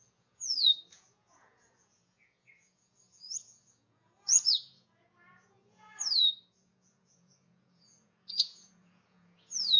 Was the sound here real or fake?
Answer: fake